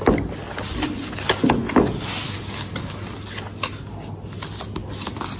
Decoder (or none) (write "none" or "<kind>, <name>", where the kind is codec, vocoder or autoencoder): none